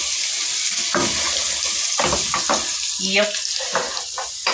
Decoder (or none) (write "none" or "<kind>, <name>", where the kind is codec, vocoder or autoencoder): none